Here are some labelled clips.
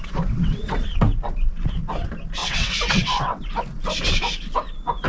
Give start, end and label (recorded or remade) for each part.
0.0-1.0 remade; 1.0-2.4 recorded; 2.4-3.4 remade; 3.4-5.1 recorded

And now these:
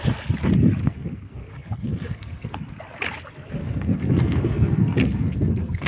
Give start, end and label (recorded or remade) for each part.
0.0-0.8 recorded; 0.8-2.7 remade; 2.7-3.6 recorded; 3.6-5.9 remade

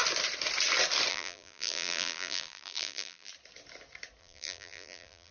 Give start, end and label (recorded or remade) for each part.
0.0-1.1 recorded; 1.1-3.3 remade; 3.3-4.2 recorded; 4.2-5.3 remade

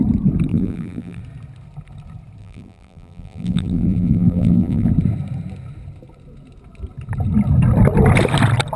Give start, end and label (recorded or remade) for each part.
0.0-0.5 recorded; 0.5-1.2 remade; 1.2-2.4 recorded; 2.4-4.9 remade; 4.9-8.8 recorded

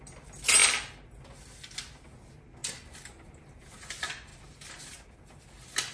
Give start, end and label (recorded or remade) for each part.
0.0-5.9 recorded

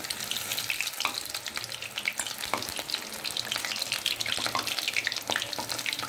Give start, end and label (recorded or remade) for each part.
0.0-6.1 recorded

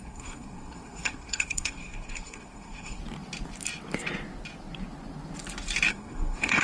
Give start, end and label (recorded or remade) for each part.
0.0-3.0 remade; 3.0-5.9 recorded; 5.9-6.6 remade